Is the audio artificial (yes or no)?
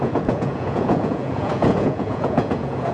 yes